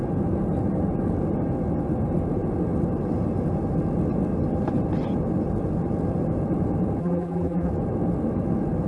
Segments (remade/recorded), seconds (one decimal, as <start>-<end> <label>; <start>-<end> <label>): 0.0-7.0 recorded; 7.0-7.7 remade; 7.7-8.9 recorded